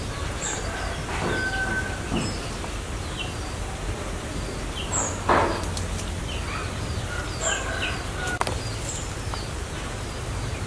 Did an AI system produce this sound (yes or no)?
no